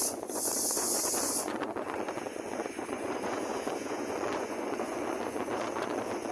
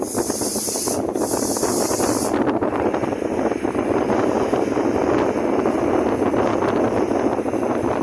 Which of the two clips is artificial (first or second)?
first